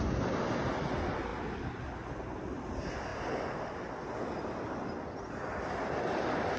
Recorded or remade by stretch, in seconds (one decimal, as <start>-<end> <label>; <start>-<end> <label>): 0.0-6.6 recorded